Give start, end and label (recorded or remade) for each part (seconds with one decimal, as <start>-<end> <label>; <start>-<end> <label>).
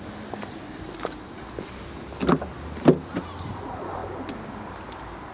0.0-4.0 recorded; 4.0-5.3 remade